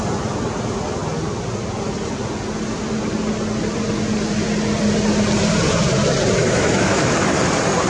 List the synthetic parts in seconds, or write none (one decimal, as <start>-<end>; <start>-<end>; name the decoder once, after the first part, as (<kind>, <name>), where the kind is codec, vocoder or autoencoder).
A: 6.4-7.1 (autoencoder, DAC-VAE)